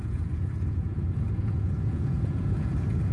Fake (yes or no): yes